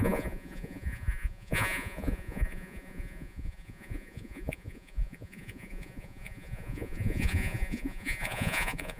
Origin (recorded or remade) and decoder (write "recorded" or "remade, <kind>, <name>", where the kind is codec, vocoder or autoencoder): remade, vocoder, Vocos